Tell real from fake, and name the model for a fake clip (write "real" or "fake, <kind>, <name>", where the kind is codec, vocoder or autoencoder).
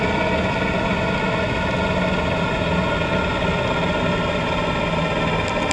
real